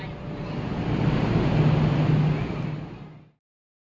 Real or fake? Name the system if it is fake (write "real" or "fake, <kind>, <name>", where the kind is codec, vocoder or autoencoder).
real